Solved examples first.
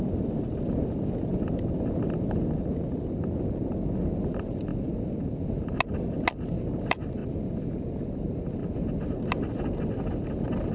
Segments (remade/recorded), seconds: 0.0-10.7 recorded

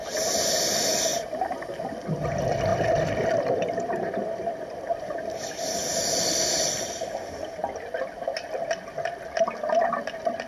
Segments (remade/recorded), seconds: 0.0-1.1 remade; 1.1-1.8 recorded; 1.8-5.8 remade; 5.8-7.1 recorded; 7.1-10.5 remade